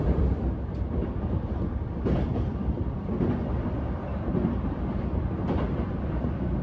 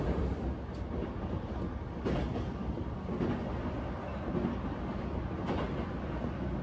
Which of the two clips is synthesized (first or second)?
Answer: first